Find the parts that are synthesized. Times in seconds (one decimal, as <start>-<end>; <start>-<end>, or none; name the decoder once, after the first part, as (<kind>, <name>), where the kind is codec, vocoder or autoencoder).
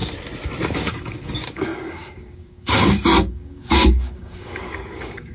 0.7-5.3 (codec, DAC)